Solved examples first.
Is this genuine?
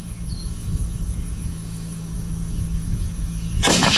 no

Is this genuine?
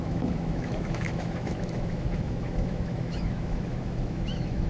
no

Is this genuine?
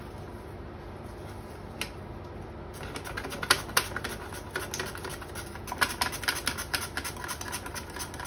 yes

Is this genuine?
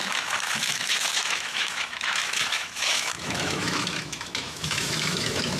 no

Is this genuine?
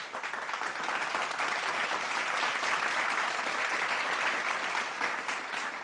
yes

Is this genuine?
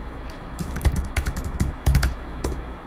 no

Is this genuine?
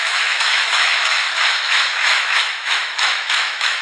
no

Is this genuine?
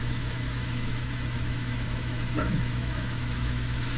no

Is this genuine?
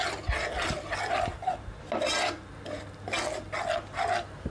yes